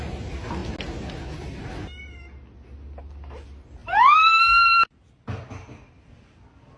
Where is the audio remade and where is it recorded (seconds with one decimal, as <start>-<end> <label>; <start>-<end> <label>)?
0.0-6.8 recorded